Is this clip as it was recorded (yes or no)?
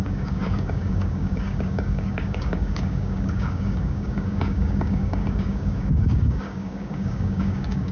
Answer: no